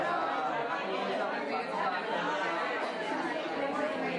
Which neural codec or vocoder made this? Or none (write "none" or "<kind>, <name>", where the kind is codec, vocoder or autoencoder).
none